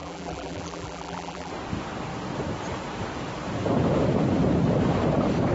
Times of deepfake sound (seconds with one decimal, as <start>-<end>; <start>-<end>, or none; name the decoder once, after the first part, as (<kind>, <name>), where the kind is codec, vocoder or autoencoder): 0.0-1.5 (vocoder, BigVGAN v2)